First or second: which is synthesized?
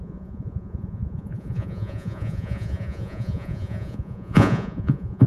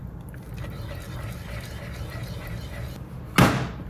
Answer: first